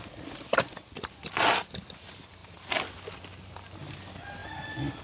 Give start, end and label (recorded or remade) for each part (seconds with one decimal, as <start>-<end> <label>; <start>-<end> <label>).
0.0-5.0 recorded